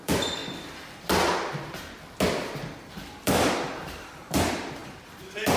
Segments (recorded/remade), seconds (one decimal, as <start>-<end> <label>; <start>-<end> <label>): 0.0-0.4 remade; 0.4-2.8 recorded; 2.8-5.6 remade